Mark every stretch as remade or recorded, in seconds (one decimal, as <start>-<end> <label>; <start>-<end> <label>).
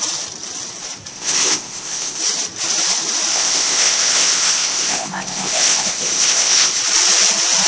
0.0-1.1 recorded; 1.1-2.2 remade; 2.2-3.3 recorded; 3.3-6.8 remade; 6.8-7.7 recorded